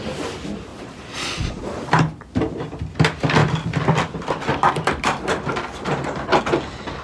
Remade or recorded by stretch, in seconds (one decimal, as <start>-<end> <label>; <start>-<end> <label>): 0.0-0.7 recorded; 0.7-1.6 remade; 1.6-7.0 recorded